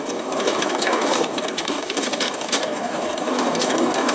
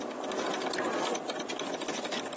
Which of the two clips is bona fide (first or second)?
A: second